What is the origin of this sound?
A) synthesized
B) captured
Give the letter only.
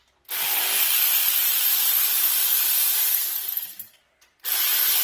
B